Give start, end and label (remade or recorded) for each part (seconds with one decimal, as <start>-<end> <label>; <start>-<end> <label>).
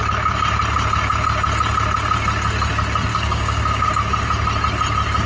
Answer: 0.0-3.1 recorded; 3.1-3.9 remade; 3.9-5.3 recorded